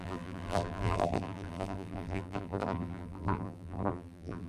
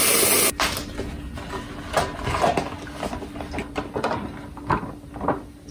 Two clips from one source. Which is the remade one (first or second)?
first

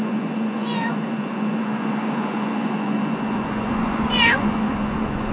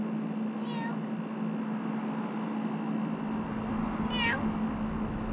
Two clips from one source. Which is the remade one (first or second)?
first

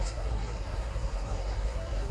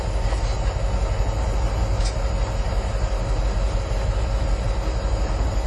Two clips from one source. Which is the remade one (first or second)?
first